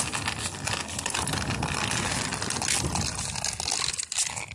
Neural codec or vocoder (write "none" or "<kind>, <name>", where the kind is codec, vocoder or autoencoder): none